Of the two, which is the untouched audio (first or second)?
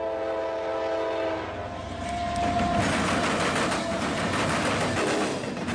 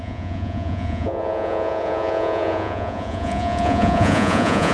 first